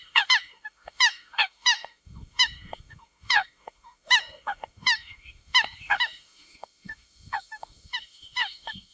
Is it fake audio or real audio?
fake